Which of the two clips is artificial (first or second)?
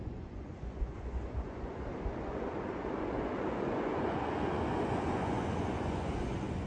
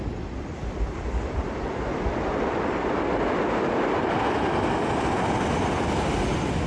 first